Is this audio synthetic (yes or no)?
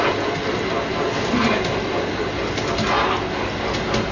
no